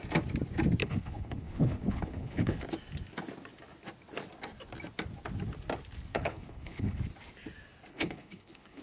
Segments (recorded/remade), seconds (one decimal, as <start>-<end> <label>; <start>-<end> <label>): 0.0-0.8 recorded; 0.8-2.6 remade; 2.6-6.1 recorded; 6.1-7.0 remade; 7.0-7.9 recorded; 7.9-8.8 remade